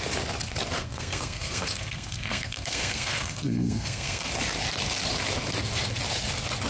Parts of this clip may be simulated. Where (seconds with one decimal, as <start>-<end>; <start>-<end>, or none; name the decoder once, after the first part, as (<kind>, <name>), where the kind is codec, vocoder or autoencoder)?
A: 0.8-4.3 (codec, SNAC)